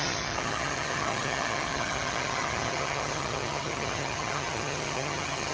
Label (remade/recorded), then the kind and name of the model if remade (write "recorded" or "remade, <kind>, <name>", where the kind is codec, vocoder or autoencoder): remade, vocoder, HiFi-GAN